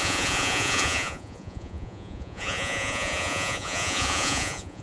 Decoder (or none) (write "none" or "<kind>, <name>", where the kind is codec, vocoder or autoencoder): vocoder, Vocos